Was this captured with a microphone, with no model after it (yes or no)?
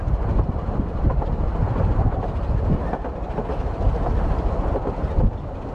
yes